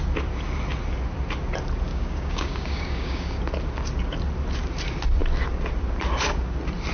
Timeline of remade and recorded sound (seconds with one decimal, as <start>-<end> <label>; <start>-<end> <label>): 0.0-1.9 recorded; 1.9-3.4 remade; 3.4-6.9 recorded